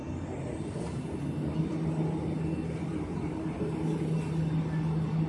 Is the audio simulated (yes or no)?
no